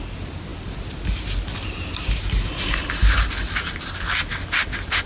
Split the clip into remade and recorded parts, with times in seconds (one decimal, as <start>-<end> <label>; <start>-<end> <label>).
0.0-5.1 recorded